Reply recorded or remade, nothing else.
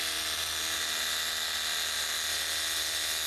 recorded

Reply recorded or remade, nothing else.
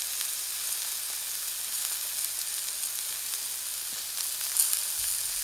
recorded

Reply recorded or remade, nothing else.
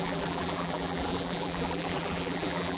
remade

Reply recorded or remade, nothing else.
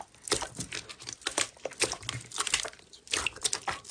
recorded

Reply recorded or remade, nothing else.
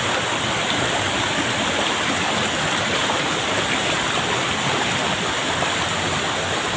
remade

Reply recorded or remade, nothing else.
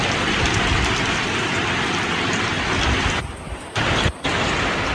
remade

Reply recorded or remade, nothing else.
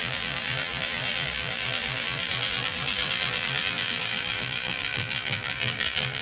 remade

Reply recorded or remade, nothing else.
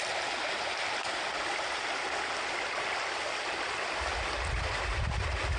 recorded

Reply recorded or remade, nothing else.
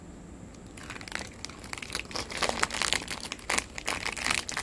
recorded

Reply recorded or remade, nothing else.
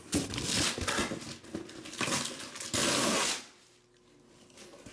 recorded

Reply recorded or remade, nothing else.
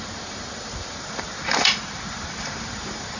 remade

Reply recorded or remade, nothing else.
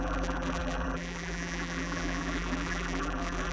remade